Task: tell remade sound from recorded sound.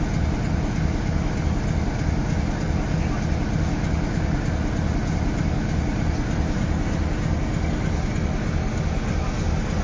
recorded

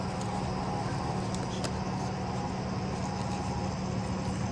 recorded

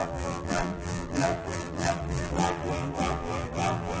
remade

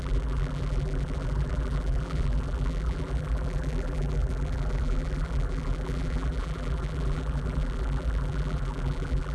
remade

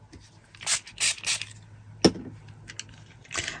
recorded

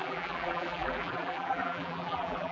remade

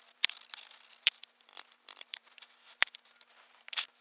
remade